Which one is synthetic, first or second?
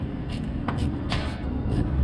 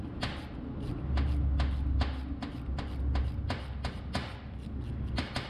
first